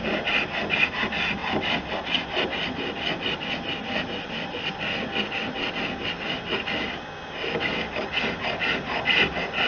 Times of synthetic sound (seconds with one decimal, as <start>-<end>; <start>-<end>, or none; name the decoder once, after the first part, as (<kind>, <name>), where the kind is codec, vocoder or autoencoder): none